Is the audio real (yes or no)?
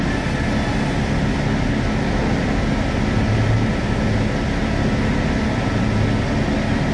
yes